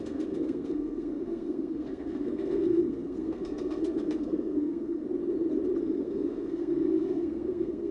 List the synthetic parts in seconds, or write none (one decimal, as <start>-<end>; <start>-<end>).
0.0-5.0; 5.8-7.9